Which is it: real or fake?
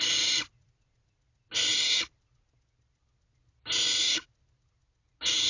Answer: real